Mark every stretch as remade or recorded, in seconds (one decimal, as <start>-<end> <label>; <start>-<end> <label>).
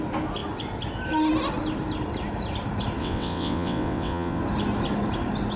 0.0-3.0 recorded; 3.0-4.4 remade; 4.4-5.6 recorded